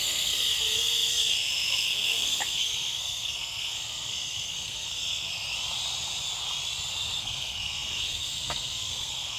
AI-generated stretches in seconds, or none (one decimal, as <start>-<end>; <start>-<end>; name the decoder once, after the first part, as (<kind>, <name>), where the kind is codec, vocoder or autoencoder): 0.0-5.3 (codec, SNAC); 7.2-9.4